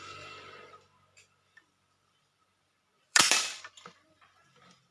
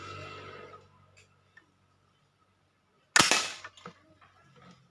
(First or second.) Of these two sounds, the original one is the second